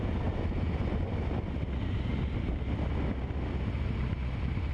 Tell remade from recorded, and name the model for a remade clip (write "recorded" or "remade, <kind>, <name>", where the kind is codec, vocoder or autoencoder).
recorded